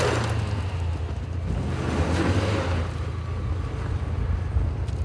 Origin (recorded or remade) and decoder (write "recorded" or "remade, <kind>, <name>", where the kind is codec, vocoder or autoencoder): recorded